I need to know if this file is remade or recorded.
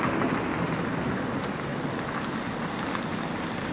recorded